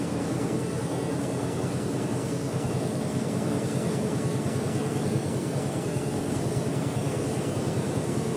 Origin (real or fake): fake